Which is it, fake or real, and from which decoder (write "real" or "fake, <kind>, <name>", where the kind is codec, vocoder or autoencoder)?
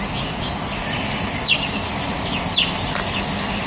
real